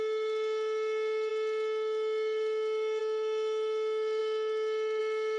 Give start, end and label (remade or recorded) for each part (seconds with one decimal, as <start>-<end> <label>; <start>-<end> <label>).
0.0-5.4 recorded